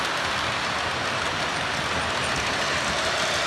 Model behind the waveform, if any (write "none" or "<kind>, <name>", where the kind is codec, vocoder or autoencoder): none